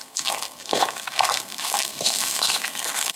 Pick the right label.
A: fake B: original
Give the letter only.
A